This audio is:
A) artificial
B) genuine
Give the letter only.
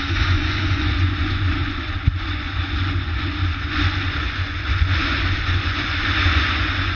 A